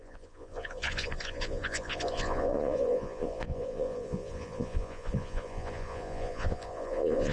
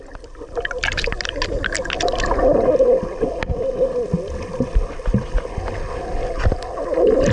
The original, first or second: second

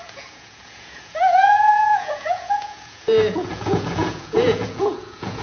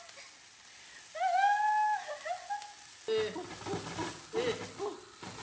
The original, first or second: second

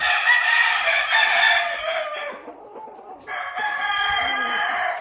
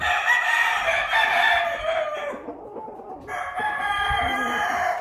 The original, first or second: second